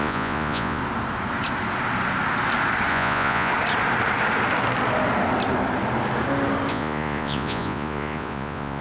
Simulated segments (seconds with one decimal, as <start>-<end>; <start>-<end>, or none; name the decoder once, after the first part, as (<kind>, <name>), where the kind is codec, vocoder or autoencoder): 0.0-0.8 (vocoder, Vocos); 2.9-3.5; 6.7-8.8